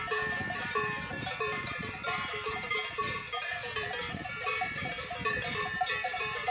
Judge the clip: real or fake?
fake